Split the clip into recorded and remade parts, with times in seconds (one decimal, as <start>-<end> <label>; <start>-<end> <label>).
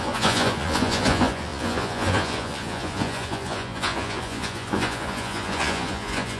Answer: 0.0-6.4 remade